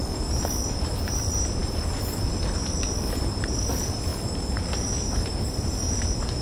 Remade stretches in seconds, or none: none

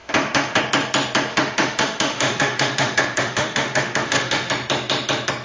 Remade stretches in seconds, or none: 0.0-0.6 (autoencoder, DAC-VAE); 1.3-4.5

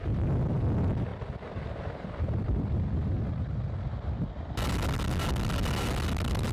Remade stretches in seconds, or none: 1.1-2.8 (vocoder, BigVGAN v2)